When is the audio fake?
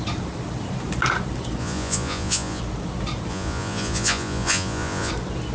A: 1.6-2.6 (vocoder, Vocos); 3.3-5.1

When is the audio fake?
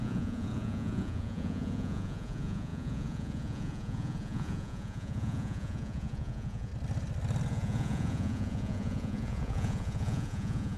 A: 0.0-6.7 (vocoder, Vocos); 7.5-10.8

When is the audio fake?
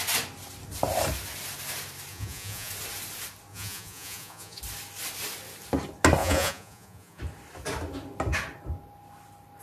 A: 2.1-2.7 (vocoder, Vocos); 3.5-4.6; 6.2-7.2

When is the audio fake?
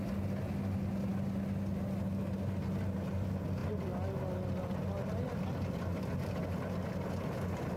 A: none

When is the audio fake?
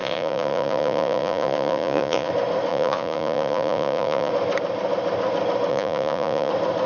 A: 0.0-2.3 (vocoder, Vocos); 2.7-4.3; 5.7-6.5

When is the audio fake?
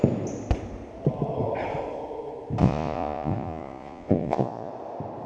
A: 2.6-4.7 (vocoder, Vocos)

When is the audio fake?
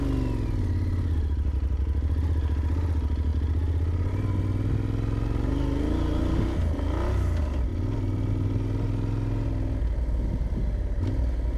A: none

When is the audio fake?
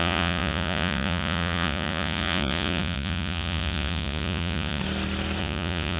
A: 0.0-4.8 (vocoder, Vocos); 5.4-6.0